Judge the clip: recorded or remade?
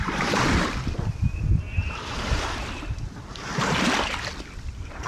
recorded